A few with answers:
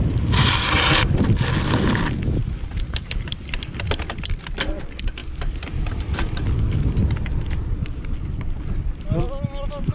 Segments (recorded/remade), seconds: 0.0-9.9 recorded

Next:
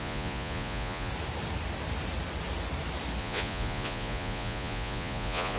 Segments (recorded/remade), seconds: 0.0-1.1 remade; 1.1-3.2 recorded; 3.2-5.6 remade